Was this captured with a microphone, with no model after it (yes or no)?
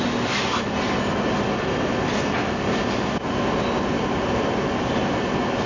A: yes